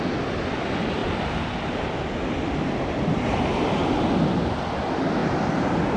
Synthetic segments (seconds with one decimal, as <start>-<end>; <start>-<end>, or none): none

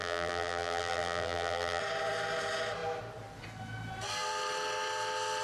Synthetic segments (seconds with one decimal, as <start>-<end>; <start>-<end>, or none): 0.0-1.8